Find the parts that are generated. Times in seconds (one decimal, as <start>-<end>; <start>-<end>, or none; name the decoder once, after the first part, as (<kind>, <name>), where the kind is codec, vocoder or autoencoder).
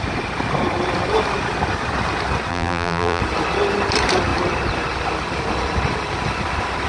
2.5-3.2 (vocoder, BigVGAN v2)